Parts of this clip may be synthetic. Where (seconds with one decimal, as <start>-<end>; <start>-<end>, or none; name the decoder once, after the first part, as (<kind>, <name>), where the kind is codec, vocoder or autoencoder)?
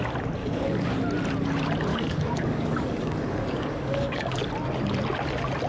0.4-0.9 (codec, DAC); 1.9-4.5